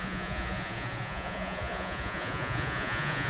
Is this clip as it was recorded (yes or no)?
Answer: no